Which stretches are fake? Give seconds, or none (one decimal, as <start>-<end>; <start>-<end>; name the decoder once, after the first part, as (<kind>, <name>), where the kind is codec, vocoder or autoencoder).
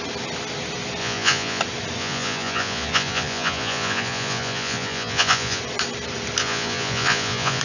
1.0-1.6 (vocoder, Vocos); 2.0-5.6; 6.4-7.6